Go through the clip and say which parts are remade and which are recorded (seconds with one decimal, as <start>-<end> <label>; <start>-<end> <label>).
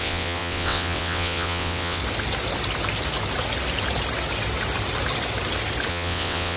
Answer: 0.0-2.0 remade; 2.0-5.9 recorded; 5.9-6.6 remade